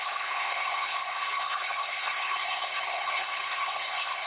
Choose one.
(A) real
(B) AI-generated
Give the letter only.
B